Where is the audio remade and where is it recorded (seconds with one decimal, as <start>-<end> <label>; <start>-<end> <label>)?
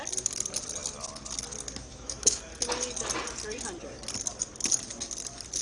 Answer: 0.0-1.9 recorded; 1.9-2.4 remade; 2.4-5.6 recorded